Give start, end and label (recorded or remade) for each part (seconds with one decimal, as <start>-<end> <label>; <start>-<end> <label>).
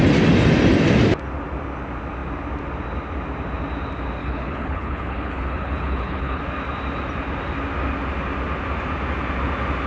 0.0-4.2 recorded; 4.2-6.4 remade; 6.4-9.9 recorded